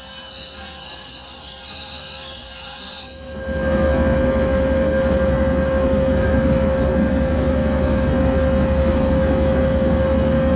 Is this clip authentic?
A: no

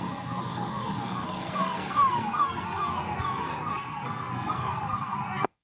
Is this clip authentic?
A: no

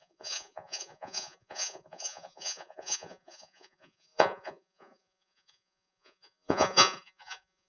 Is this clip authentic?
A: no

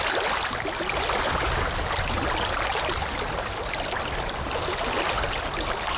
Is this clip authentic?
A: yes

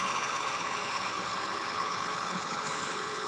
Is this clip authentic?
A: no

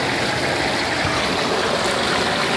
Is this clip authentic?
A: yes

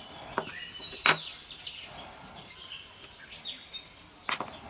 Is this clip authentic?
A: yes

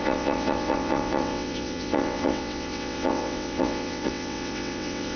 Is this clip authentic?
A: no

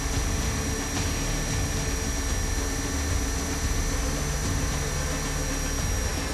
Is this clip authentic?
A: yes